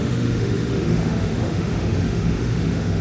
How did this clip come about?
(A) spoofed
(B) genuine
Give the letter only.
A